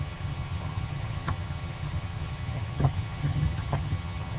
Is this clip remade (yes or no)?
yes